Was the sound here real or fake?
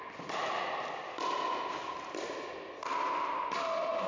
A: real